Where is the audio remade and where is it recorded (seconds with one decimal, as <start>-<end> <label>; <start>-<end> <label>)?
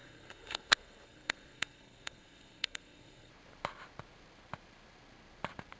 0.0-3.3 remade; 3.3-5.8 recorded